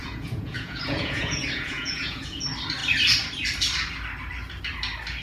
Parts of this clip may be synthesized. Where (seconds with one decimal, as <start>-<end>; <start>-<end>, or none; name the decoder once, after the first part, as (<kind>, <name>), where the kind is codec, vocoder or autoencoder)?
0.0-2.4 (vocoder, Vocos)